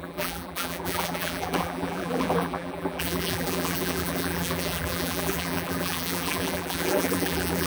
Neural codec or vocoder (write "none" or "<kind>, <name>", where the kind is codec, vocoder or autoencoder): vocoder, BigVGAN v2